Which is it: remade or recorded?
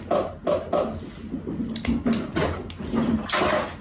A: recorded